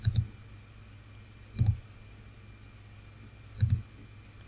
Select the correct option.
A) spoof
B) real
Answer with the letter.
B